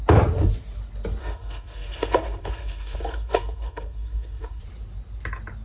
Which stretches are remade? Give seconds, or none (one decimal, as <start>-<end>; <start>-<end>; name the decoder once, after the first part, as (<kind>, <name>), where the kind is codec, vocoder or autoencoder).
1.2-4.6 (codec, SNAC)